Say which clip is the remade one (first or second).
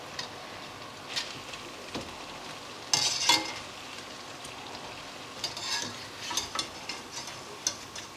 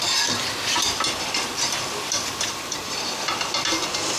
second